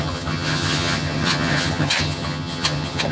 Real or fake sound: fake